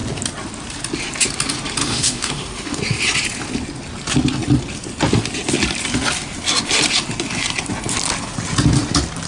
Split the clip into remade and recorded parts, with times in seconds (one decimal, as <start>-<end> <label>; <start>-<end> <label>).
0.0-1.8 recorded; 1.8-2.8 remade; 2.8-9.3 recorded